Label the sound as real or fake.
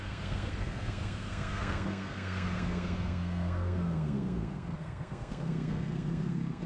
fake